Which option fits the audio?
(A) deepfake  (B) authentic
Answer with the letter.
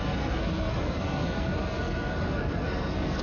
A